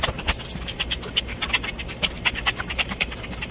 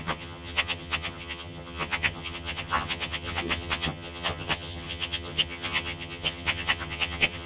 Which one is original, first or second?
first